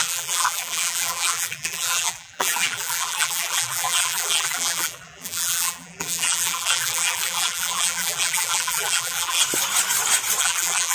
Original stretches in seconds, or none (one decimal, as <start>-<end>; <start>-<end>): 9.4-10.4